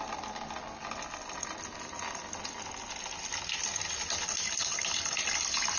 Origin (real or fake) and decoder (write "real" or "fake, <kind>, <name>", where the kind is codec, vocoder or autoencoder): real